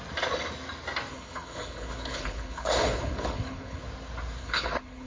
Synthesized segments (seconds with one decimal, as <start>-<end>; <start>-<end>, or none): 1.1-3.8; 4.4-5.1